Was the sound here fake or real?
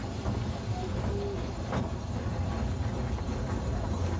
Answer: real